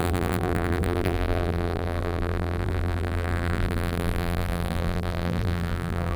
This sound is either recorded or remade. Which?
remade